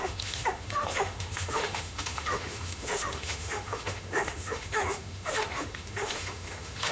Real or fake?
fake